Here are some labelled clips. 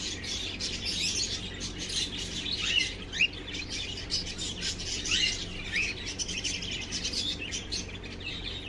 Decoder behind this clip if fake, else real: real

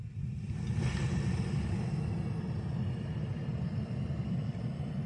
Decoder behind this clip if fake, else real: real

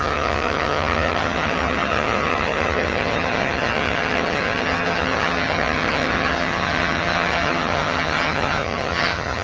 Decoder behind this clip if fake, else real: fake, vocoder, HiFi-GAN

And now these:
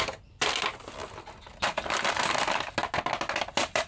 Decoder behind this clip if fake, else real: real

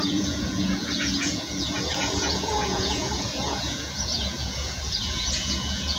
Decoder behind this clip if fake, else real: fake, vocoder, Vocos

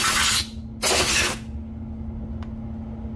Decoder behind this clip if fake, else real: real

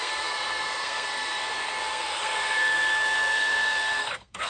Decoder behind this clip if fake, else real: fake, codec, SNAC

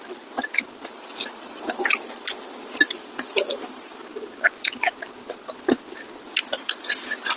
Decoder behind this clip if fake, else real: real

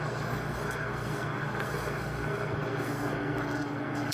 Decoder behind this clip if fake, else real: fake, codec, SNAC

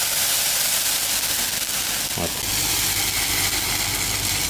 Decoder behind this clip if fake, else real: real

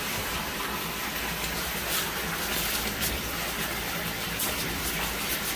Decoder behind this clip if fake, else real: real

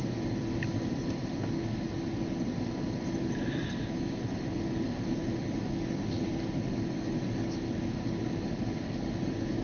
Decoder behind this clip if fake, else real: real